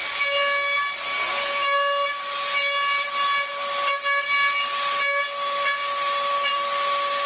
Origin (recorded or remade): recorded